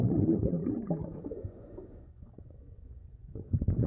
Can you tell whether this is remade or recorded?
remade